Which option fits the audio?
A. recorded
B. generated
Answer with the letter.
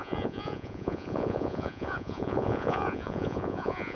B